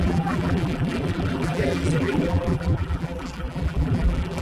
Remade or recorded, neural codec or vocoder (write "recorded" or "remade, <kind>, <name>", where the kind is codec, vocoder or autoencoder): remade, vocoder, BigVGAN v2